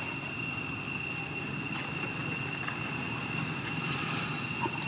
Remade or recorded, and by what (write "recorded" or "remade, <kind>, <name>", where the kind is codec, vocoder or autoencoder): recorded